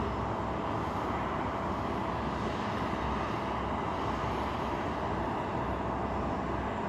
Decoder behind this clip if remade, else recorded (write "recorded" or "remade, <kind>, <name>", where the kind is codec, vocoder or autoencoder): recorded